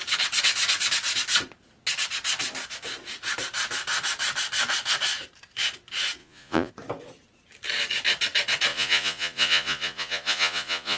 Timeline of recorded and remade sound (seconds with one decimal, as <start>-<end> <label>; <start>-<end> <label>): 0.0-6.2 recorded; 6.2-6.7 remade; 6.7-8.7 recorded; 8.7-11.0 remade